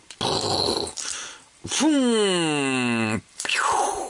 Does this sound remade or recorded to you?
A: recorded